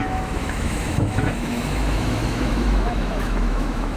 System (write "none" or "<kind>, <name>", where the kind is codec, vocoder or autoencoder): autoencoder, DAC-VAE